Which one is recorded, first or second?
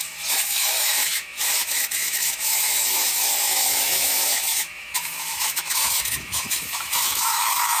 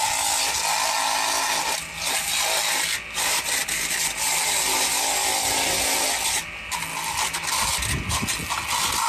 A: second